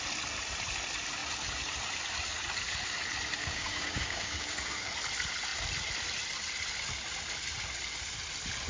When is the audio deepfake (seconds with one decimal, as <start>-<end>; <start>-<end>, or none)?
3.4-4.9

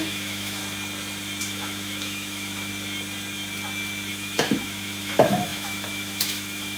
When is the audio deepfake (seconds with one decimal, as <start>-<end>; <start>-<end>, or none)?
0.0-0.6; 1.4-2.7; 4.1-6.8

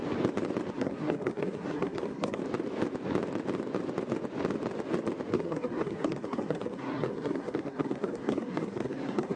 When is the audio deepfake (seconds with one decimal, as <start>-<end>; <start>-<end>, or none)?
0.7-2.4; 5.3-9.4

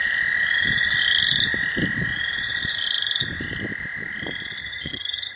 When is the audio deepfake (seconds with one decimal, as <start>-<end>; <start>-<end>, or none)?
4.6-5.4

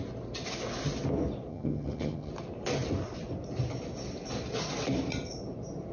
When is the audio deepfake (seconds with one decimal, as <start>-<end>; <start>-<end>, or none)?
1.5-2.3

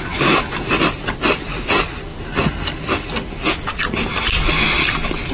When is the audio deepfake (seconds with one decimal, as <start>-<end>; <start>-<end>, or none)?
0.0-0.8